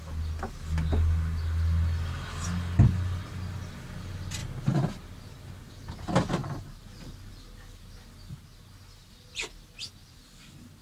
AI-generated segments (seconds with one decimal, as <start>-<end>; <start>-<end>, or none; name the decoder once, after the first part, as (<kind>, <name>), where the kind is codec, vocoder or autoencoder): 6.4-7.3 (vocoder, BigVGAN v2)